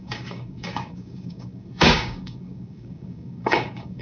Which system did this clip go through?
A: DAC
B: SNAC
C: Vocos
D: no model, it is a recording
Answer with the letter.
A